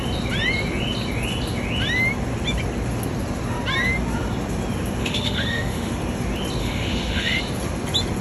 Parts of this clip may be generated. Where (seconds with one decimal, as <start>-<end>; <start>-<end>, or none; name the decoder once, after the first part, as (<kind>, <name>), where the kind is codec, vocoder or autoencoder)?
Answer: 5.0-5.9 (autoencoder, DAC-VAE); 6.6-7.4